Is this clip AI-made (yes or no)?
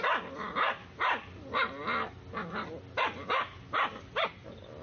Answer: no